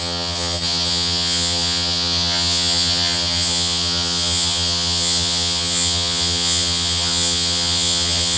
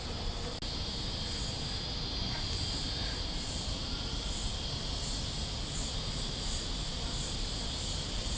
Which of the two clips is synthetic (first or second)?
first